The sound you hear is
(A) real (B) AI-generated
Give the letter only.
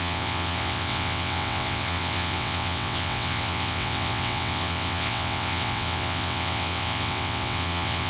B